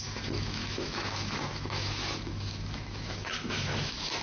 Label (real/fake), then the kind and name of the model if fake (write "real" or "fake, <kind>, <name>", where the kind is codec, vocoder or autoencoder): fake, autoencoder, DAC-VAE